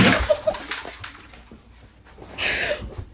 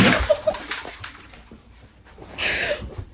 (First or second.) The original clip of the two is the first